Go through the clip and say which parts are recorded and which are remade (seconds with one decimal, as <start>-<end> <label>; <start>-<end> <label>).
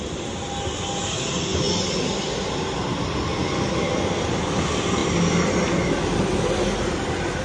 0.0-7.4 recorded